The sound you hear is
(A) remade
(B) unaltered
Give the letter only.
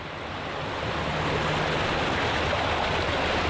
B